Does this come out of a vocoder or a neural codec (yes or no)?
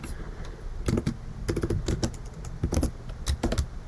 no